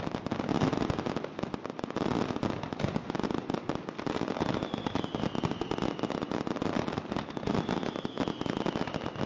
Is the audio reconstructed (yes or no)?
no